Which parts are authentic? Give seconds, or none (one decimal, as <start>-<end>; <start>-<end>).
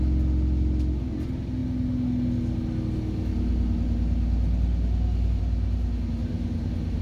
0.0-7.0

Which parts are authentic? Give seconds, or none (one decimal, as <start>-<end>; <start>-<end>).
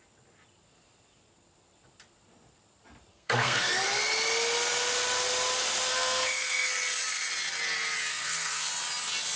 0.0-3.1; 3.7-5.9; 6.7-8.1; 8.7-9.4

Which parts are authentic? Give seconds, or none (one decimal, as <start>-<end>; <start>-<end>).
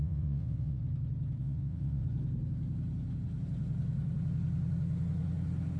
0.8-1.4; 2.0-5.8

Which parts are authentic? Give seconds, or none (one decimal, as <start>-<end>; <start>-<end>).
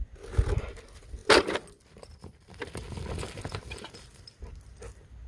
0.0-5.3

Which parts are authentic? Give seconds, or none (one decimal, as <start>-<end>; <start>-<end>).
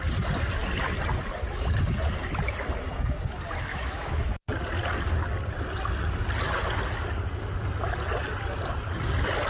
0.0-3.7; 4.4-9.5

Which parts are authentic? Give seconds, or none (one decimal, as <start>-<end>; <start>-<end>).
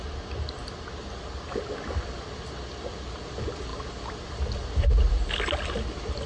0.0-6.3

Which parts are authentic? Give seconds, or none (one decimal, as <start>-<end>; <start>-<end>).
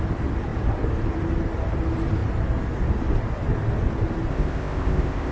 0.0-4.3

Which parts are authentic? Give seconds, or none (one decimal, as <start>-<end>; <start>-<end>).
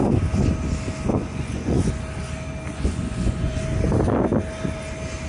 0.0-1.1; 1.9-2.7; 3.6-5.3